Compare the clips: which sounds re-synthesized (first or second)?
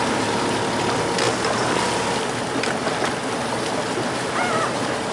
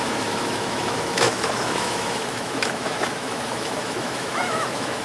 second